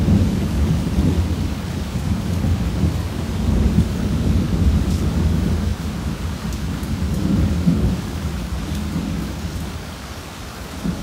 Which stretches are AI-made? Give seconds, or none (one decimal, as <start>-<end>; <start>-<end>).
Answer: 0.0-11.0